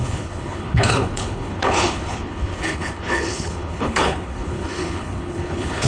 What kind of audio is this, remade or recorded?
remade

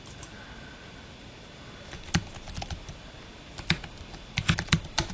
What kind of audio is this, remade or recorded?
recorded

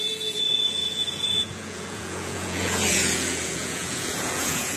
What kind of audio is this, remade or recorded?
remade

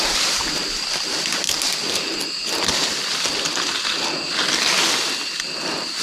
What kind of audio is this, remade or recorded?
recorded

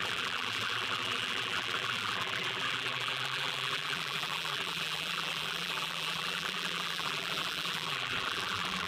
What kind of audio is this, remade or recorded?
remade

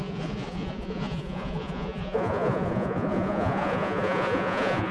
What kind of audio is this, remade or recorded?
remade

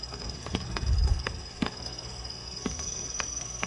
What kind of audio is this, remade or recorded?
remade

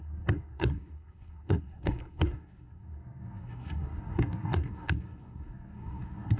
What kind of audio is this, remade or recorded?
remade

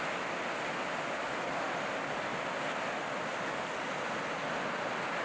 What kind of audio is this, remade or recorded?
recorded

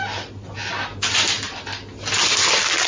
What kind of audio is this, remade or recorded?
recorded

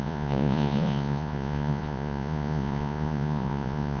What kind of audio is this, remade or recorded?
remade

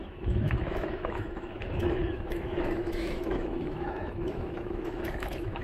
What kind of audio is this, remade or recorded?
remade